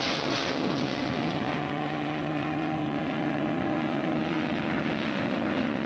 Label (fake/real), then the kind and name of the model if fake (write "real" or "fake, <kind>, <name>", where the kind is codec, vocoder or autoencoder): fake, vocoder, WaveNeXt